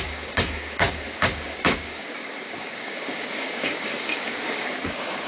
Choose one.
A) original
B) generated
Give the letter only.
B